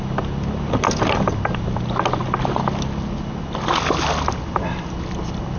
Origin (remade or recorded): recorded